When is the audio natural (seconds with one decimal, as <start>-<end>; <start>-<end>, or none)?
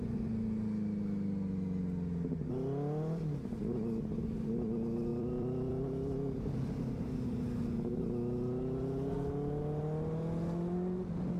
0.0-5.1; 5.7-11.4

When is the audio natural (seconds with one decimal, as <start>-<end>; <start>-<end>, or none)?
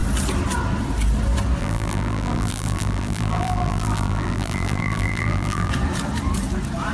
0.0-1.6; 5.7-6.9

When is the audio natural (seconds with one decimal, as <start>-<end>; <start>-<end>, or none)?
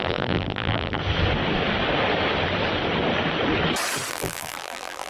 1.0-4.1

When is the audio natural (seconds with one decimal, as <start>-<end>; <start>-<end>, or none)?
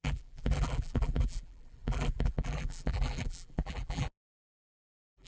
none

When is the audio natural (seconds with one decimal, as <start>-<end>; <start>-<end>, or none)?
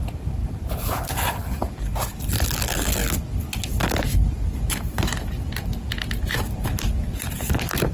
0.0-0.4; 1.8-7.9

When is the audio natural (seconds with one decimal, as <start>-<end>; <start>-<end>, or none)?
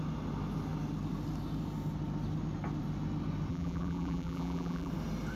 0.0-3.5; 4.9-5.4